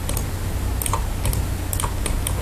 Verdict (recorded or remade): recorded